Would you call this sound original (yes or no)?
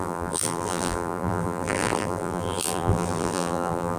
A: no